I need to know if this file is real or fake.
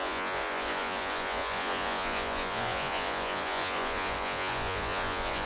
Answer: fake